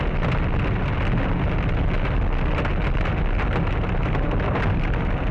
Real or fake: real